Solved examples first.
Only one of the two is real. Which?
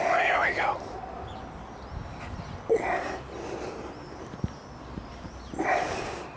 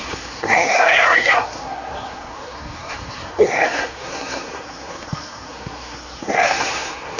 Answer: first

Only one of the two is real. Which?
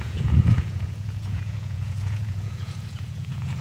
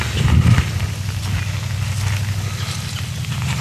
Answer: second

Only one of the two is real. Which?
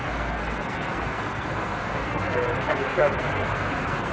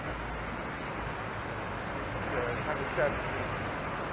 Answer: second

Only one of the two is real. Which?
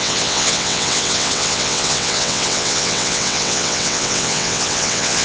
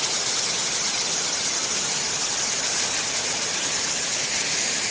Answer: second